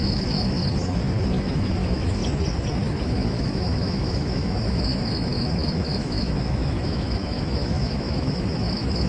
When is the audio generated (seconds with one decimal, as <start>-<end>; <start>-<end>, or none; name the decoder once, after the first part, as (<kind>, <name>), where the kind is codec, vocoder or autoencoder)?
0.0-0.6 (autoencoder, DAC-VAE); 1.4-2.2; 3.0-9.1